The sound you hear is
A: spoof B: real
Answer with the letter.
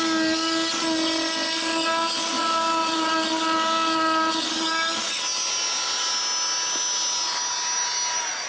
B